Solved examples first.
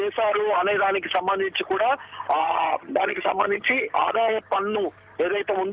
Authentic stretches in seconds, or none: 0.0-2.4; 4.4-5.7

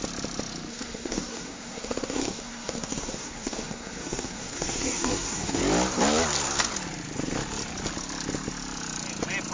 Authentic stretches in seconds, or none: 0.0-0.7; 5.6-9.5

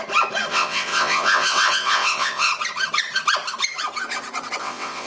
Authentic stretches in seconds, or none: 0.0-0.5; 2.5-4.6